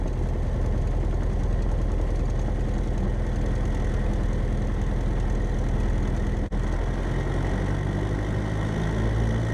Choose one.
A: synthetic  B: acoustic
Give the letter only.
B